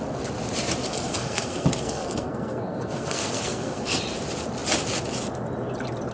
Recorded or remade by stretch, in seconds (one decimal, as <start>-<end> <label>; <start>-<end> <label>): 0.0-0.8 recorded; 0.8-4.0 remade; 4.0-6.1 recorded